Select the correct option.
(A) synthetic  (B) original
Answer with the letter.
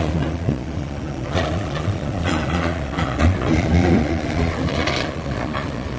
A